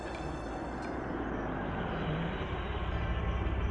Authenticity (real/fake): real